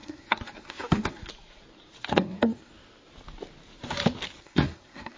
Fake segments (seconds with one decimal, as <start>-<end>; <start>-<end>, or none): 0.0-1.3; 2.1-2.7; 4.4-5.2